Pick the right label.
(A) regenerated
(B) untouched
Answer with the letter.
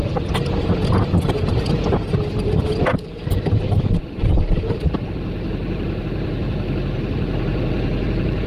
B